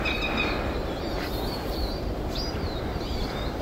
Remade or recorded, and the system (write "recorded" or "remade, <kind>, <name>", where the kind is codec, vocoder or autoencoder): remade, vocoder, BigVGAN v2